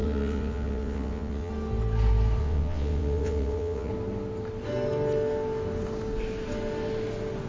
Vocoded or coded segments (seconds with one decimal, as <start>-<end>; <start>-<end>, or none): 0.0-1.5; 2.4-3.9